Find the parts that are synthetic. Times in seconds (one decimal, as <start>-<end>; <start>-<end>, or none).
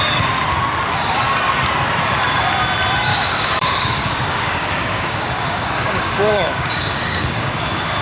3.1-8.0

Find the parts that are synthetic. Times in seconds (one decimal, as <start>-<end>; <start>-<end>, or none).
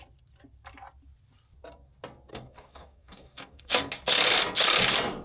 2.3-3.9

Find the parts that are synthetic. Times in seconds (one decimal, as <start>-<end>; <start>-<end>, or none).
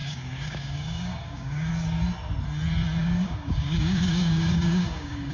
0.0-1.7; 3.0-5.3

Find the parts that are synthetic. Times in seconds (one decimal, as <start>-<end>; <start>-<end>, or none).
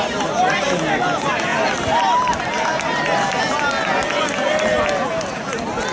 none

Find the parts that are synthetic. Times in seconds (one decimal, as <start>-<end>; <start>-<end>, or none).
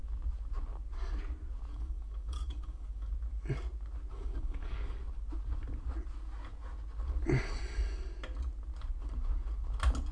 1.7-3.1; 4.1-5.0